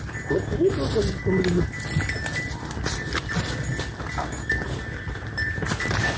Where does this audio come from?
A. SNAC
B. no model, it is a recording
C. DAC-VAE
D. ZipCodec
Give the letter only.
B